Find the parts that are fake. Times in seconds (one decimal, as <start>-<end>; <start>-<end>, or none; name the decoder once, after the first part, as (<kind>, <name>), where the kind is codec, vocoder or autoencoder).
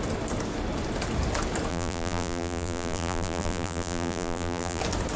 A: 1.7-4.8 (vocoder, BigVGAN v2)